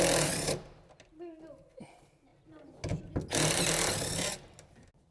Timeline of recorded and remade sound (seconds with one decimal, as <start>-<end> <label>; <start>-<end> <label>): 0.0-5.1 recorded